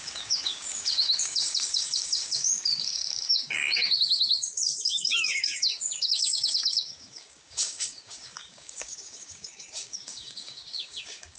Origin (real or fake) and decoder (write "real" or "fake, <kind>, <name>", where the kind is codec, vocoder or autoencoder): fake, codec, DAC